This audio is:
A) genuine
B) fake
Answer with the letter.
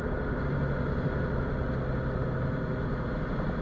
A